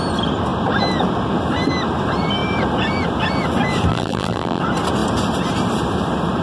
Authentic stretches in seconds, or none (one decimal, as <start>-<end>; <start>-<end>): 0.0-3.9; 4.6-6.4